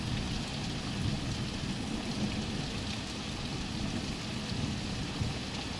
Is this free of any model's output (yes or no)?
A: yes